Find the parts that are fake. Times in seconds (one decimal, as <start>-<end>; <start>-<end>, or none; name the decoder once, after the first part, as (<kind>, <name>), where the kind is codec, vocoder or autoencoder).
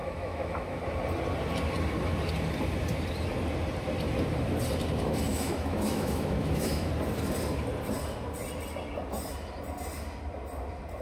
0.0-0.8 (autoencoder, DAC-VAE); 5.3-6.9